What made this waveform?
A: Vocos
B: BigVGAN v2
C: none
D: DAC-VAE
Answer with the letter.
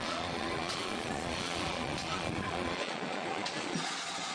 A